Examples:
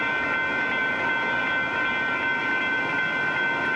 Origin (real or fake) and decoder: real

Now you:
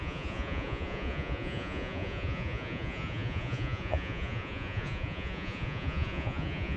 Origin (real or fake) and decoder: fake, vocoder, Vocos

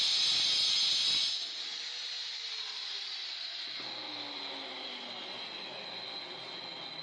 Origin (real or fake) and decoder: real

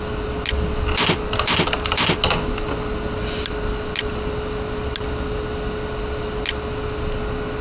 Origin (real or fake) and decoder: real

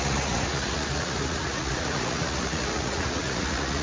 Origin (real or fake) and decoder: fake, vocoder, Vocos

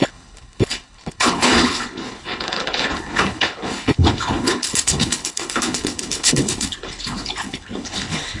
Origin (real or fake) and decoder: fake, codec, HILCodec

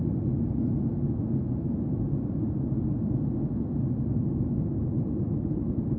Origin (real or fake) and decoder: real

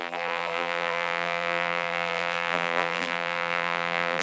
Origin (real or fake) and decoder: fake, vocoder, BigVGAN v2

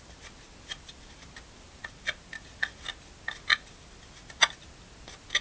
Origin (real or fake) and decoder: real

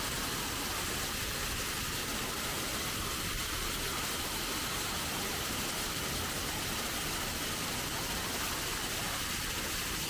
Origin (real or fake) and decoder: real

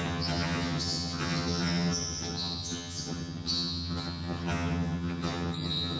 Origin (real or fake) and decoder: fake, vocoder, HiFi-GAN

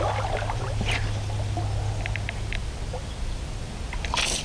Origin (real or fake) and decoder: real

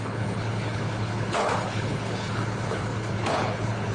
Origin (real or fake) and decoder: fake, codec, HILCodec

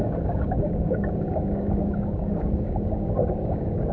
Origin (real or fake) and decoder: fake, codec, DAC